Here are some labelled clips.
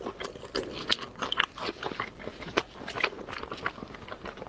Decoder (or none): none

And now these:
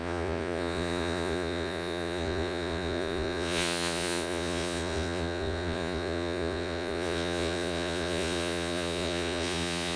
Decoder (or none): vocoder, Vocos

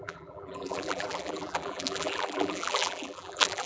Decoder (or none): vocoder, BigVGAN v2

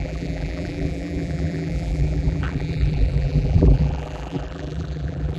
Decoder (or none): vocoder, BigVGAN v2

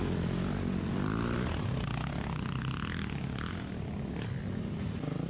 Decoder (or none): none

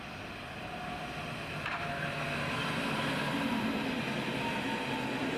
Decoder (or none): none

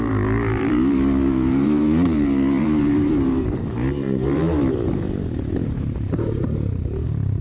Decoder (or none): vocoder, BigVGAN v2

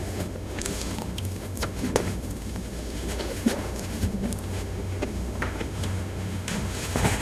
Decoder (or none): autoencoder, DAC-VAE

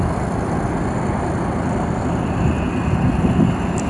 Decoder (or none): none